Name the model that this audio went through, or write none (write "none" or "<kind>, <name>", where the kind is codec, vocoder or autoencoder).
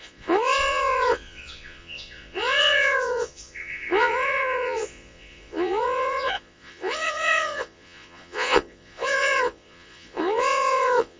vocoder, Vocos